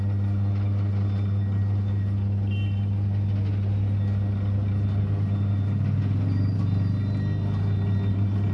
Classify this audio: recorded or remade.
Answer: recorded